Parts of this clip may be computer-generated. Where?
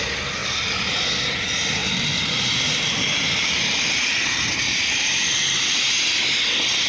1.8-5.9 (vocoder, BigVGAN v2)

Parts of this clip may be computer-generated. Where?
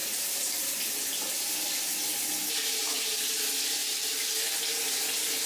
0.0-0.8 (vocoder, BigVGAN v2); 2.8-3.3; 3.8-4.3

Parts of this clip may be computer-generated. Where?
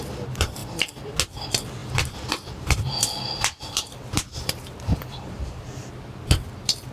0.6-1.1 (vocoder, BigVGAN v2); 1.8-5.9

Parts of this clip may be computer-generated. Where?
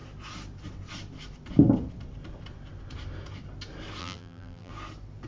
4.0-4.7 (vocoder, BigVGAN v2)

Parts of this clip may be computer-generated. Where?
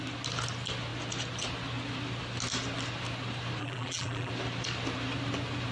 3.6-4.3 (vocoder, BigVGAN v2)